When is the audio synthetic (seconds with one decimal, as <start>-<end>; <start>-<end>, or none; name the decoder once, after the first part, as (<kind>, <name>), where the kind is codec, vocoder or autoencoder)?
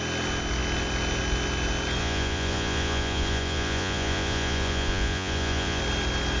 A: 2.0-5.8 (vocoder, Vocos)